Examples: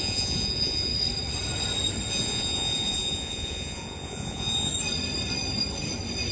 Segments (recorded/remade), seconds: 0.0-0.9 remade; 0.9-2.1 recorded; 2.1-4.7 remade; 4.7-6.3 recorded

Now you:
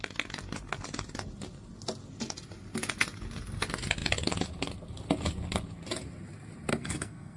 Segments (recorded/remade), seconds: 0.0-6.7 recorded; 6.7-7.4 remade

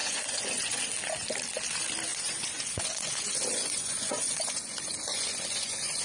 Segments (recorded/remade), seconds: 0.0-0.8 remade; 0.8-2.1 recorded; 2.1-6.0 remade

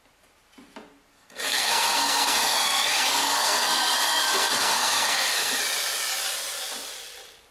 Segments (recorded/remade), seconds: 0.0-1.1 recorded; 1.1-5.6 remade; 5.6-7.5 recorded